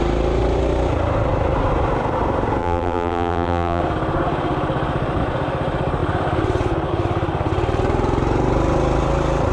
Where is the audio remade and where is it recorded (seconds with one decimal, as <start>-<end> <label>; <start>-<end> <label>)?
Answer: 0.0-2.6 recorded; 2.6-3.8 remade; 3.8-9.5 recorded

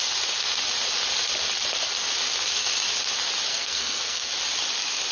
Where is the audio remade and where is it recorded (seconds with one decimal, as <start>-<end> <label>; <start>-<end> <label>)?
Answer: 0.0-3.5 recorded; 3.5-4.3 remade; 4.3-5.1 recorded

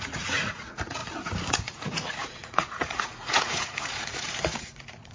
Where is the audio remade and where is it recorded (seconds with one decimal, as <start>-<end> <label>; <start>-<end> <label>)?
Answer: 0.0-1.0 remade; 1.0-1.5 recorded; 1.5-5.1 remade

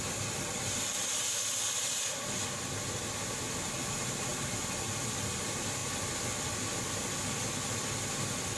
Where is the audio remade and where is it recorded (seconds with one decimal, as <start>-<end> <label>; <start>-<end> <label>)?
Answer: 0.0-8.6 recorded

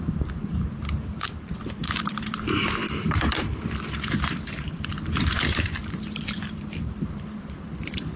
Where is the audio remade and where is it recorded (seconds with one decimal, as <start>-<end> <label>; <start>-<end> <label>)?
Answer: 0.0-5.8 remade; 5.8-6.4 recorded; 6.4-8.2 remade

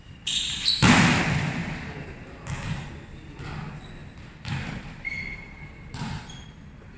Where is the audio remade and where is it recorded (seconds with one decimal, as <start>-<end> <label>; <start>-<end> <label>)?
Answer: 0.0-4.0 recorded; 4.0-7.0 remade